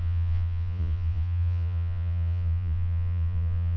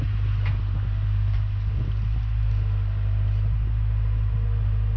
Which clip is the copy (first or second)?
first